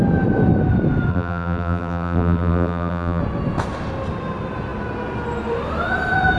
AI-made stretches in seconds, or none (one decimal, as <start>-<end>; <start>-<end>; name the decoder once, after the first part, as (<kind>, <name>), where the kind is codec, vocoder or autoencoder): 1.1-3.2 (vocoder, BigVGAN v2)